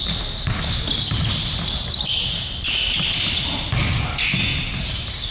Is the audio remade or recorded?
recorded